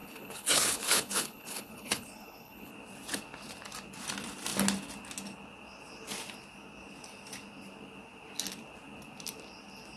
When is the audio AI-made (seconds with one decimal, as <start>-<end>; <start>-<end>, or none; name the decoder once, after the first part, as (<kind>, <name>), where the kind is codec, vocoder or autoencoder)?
0.0-2.7 (codec, HILCodec)